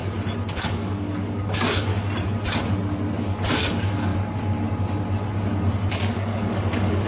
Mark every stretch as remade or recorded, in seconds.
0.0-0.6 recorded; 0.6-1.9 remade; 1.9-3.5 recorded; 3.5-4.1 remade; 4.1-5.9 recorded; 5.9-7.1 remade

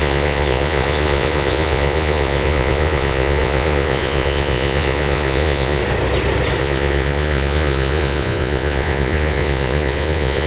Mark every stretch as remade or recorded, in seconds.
0.0-5.8 remade; 5.8-6.6 recorded; 6.6-10.5 remade